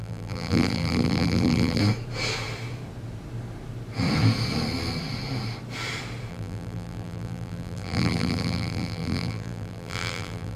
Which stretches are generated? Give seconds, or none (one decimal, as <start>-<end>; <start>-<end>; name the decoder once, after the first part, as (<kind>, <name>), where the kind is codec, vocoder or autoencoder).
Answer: 0.0-1.8 (vocoder, BigVGAN v2); 6.3-10.6

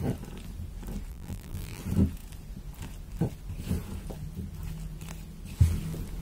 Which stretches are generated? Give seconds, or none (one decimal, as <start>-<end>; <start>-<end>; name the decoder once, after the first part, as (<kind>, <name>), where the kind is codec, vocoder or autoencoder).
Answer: 1.1-1.8 (vocoder, BigVGAN v2)

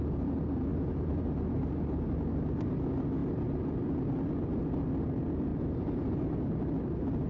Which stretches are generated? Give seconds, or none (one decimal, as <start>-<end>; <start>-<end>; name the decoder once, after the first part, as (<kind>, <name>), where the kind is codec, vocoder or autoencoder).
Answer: 0.7-2.2 (vocoder, BigVGAN v2); 5.5-6.5

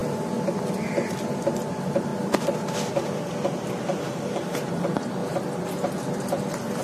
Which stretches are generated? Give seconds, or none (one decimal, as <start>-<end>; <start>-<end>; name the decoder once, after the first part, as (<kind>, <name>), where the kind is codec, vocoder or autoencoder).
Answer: 1.7-2.1 (vocoder, BigVGAN v2); 3.8-5.2

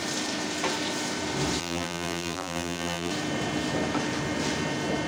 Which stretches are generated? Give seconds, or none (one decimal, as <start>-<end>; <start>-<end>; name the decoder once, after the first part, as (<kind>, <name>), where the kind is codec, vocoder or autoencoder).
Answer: 1.6-3.1 (vocoder, BigVGAN v2)

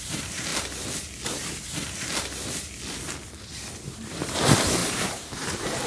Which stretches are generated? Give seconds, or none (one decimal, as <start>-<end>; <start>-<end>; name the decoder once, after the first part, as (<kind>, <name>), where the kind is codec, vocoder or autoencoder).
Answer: 0.0-0.5 (vocoder, BigVGAN v2); 4.0-5.9

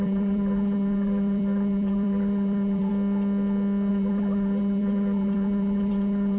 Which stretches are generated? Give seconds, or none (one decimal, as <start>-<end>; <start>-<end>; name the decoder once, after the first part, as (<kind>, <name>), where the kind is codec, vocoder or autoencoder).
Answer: 0.0-2.9 (vocoder, BigVGAN v2); 3.9-6.4